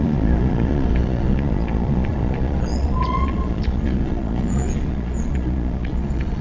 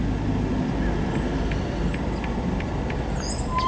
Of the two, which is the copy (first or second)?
first